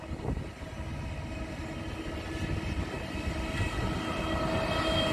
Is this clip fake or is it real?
real